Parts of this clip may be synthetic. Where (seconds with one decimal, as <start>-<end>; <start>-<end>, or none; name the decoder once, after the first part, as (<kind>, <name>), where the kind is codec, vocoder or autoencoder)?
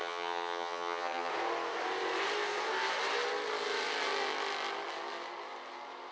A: 0.0-1.3 (vocoder, HiFi-GAN)